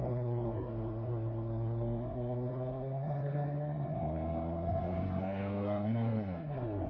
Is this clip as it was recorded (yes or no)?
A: no